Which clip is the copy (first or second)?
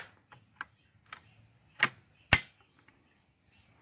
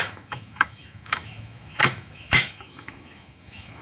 second